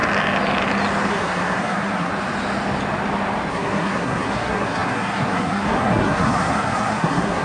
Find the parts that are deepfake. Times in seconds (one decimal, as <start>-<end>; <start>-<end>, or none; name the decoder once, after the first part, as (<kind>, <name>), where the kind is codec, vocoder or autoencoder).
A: 1.1-2.1 (codec, SNAC); 3.5-7.4